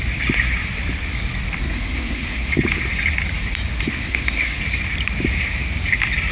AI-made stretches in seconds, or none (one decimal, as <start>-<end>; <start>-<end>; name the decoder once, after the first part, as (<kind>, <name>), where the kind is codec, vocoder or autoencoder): 1.6-2.5 (codec, SNAC); 3.9-4.6